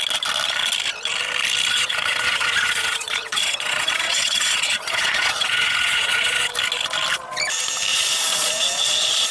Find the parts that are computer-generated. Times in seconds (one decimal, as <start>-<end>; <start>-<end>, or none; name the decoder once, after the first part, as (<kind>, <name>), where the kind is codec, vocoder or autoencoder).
1.7-6.5 (vocoder, Vocos); 7.9-9.3